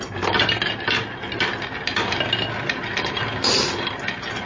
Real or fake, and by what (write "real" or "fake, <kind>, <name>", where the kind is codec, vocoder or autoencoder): real